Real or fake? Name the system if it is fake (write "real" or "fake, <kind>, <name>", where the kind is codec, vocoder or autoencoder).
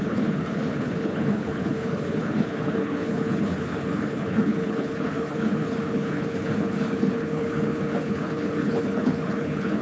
fake, codec, HILCodec